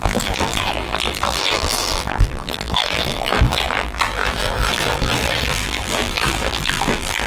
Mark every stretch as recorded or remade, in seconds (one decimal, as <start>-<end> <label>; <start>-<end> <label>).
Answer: 0.0-7.3 remade